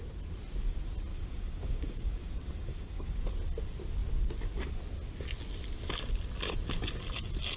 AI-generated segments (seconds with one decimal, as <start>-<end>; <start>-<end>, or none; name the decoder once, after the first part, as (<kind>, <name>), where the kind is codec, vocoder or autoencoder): 1.1-3.3 (codec, DAC)